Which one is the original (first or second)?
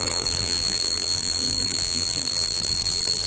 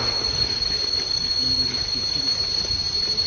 second